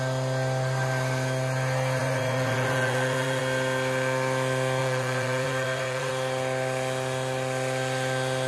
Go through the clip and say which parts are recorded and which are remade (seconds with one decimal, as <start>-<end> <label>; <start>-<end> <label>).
0.0-2.0 recorded; 2.0-3.4 remade; 3.4-4.8 recorded; 4.8-6.1 remade; 6.1-8.5 recorded